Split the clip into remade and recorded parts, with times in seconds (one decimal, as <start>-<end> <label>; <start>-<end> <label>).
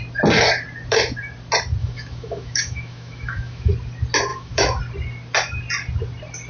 0.0-1.8 recorded; 1.8-3.7 remade; 3.7-4.3 recorded; 4.3-4.8 remade; 4.8-6.5 recorded